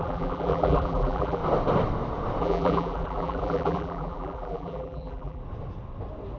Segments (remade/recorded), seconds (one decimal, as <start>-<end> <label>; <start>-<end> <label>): 0.0-1.4 remade; 1.4-2.4 recorded; 2.4-5.4 remade; 5.4-6.4 recorded